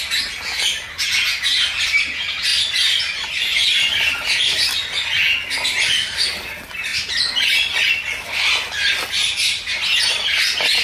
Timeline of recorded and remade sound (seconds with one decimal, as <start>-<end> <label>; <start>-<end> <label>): 0.0-10.8 recorded